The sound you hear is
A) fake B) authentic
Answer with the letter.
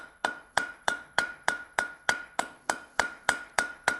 A